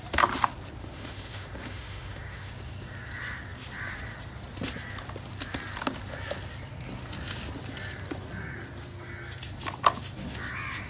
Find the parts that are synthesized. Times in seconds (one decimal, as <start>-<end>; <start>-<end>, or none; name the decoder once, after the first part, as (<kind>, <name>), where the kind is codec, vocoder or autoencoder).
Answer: 0.8-2.5 (autoencoder, DAC-VAE)